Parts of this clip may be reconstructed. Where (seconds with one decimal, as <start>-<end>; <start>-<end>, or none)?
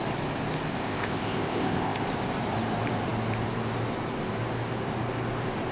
0.7-2.0